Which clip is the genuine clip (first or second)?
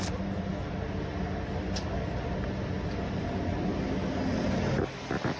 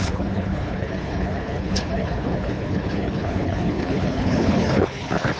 first